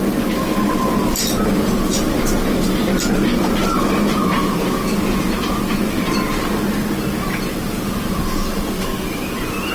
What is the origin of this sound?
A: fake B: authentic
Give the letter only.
B